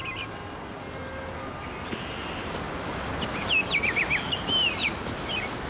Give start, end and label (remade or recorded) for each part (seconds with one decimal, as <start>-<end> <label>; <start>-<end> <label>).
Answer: 0.0-1.0 remade; 1.0-2.4 recorded; 2.4-5.7 remade